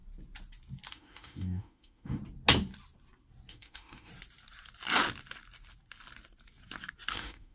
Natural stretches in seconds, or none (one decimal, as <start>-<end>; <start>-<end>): 0.0-0.9; 2.2-3.5; 4.1-7.1